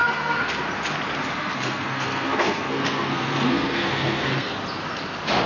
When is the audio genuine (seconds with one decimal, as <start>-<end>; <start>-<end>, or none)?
0.5-1.2; 4.5-5.5